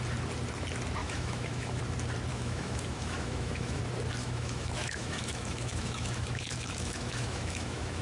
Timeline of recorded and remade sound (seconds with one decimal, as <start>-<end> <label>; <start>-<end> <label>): 0.0-1.0 recorded; 1.0-1.8 remade; 1.8-2.3 recorded; 2.3-3.8 remade; 3.8-4.2 recorded; 4.2-8.0 remade